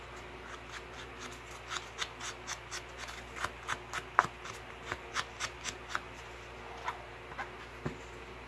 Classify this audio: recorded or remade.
recorded